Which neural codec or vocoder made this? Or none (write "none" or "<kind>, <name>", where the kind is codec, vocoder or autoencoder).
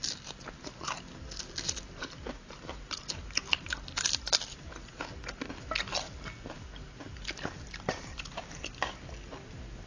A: none